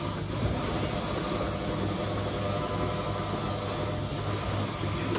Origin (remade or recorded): recorded